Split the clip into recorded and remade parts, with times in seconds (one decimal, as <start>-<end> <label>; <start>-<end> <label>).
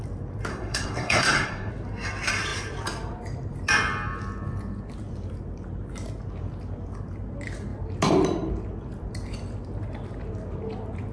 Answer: 0.0-0.5 recorded; 0.5-1.7 remade; 1.7-11.1 recorded